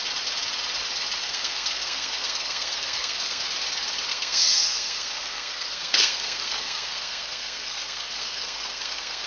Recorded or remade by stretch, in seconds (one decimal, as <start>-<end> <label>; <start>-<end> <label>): 0.0-1.2 recorded; 1.2-3.4 remade; 3.4-4.1 recorded; 4.1-9.3 remade